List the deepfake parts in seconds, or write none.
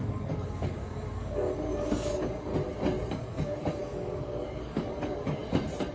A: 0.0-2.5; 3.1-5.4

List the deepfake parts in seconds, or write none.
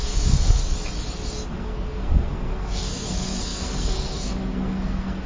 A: 0.0-0.6; 1.5-5.3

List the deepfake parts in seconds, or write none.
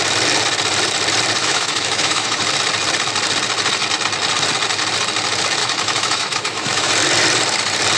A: 1.4-2.4; 5.6-6.9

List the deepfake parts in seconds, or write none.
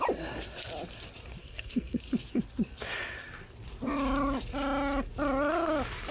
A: 1.4-2.0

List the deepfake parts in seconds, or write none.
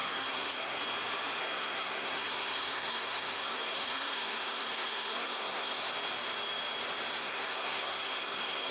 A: 0.0-0.8; 1.4-5.9; 7.2-8.7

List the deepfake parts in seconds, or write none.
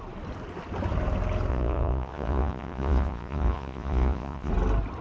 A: 1.5-4.5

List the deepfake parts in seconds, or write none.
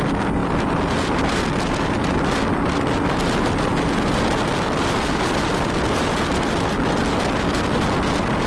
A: none